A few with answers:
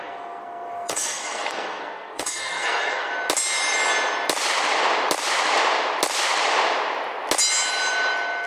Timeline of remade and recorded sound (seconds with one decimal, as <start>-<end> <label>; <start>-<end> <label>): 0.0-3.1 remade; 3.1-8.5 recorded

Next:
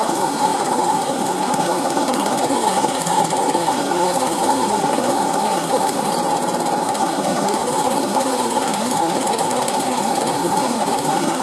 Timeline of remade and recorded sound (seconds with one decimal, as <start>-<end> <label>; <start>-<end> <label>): 0.0-6.1 remade; 6.1-6.8 recorded; 6.8-11.4 remade

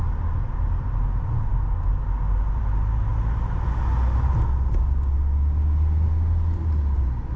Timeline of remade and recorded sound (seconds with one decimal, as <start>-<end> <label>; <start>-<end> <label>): 0.0-7.4 recorded